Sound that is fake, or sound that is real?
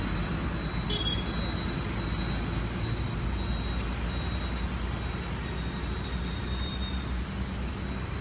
real